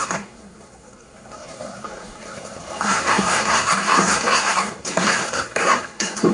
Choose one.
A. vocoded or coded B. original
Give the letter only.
A